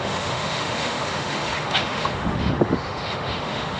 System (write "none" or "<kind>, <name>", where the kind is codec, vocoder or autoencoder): autoencoder, DAC-VAE